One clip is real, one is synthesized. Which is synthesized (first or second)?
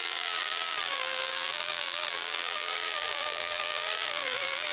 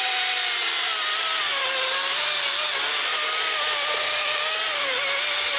first